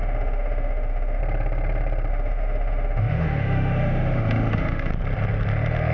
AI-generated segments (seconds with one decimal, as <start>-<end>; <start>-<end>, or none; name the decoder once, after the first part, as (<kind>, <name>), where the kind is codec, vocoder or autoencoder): 0.0-1.2 (autoencoder, DAC-VAE); 2.1-4.9